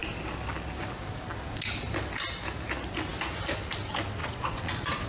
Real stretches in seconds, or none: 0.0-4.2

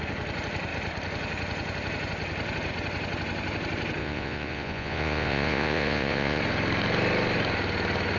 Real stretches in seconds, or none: 0.0-4.0; 6.4-8.2

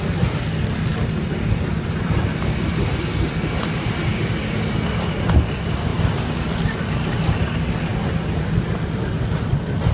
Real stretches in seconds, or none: 0.0-9.9

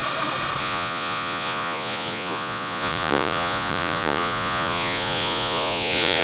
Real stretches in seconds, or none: 0.0-0.6

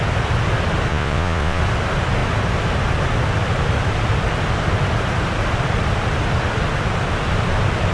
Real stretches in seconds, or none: 0.0-0.9; 1.6-7.9

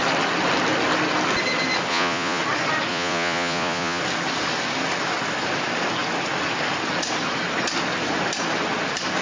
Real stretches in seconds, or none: 0.0-1.9; 2.4-2.9; 4.0-9.2